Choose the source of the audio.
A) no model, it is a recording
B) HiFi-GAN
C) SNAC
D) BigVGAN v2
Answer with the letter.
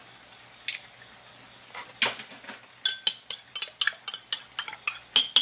A